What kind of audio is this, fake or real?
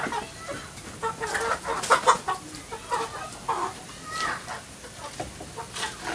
real